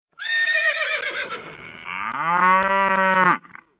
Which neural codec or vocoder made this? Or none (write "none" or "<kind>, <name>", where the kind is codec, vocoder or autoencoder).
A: codec, DAC